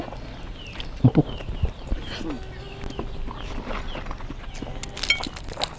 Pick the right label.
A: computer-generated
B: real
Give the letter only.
B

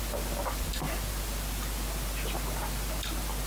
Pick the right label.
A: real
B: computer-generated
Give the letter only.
A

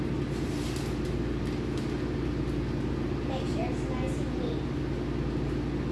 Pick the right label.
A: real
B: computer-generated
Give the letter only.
A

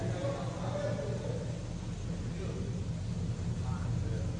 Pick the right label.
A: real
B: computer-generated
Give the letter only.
A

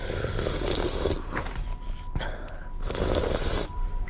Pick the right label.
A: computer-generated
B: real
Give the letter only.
B